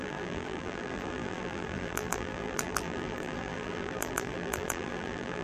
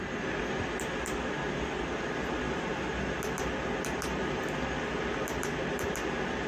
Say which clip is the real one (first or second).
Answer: second